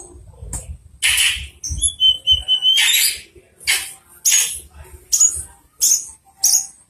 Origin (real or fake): real